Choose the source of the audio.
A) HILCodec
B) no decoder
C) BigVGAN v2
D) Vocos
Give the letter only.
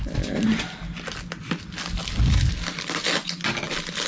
B